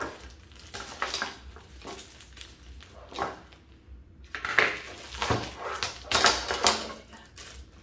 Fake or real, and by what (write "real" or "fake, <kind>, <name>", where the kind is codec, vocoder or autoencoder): real